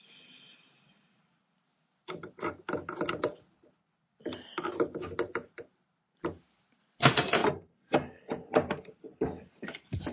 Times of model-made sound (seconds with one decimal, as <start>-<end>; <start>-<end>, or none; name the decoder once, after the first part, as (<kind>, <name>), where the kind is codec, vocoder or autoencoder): 0.0-1.4 (vocoder, BigVGAN v2); 5.3-10.1